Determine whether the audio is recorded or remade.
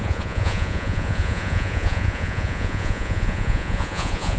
remade